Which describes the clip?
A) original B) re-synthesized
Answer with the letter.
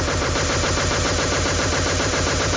B